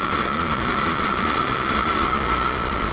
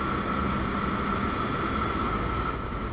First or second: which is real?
second